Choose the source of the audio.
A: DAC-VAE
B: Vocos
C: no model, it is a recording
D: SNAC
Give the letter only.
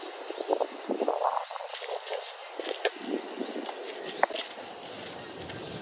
C